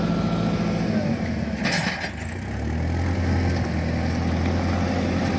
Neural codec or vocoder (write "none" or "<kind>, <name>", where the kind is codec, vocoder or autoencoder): none